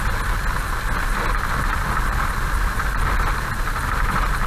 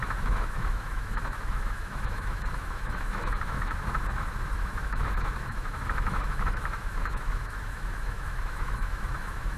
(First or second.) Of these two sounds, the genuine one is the first